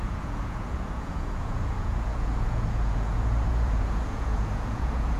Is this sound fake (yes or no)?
yes